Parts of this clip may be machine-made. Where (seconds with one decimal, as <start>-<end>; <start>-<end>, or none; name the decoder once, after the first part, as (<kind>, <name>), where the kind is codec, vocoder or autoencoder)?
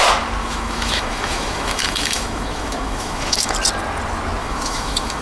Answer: 0.4-3.5 (autoencoder, DAC-VAE); 4.4-5.2